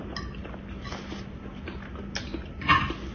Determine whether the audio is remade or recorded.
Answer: recorded